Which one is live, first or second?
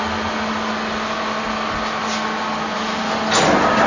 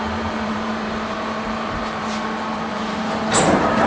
first